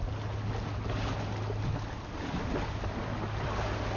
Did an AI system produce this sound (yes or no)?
no